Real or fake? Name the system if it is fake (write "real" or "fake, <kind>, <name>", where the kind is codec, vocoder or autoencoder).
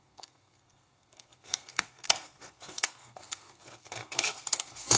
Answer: fake, codec, SNAC